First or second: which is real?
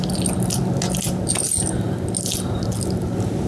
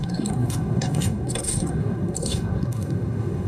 first